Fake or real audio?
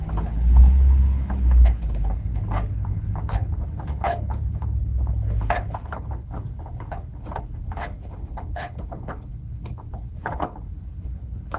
fake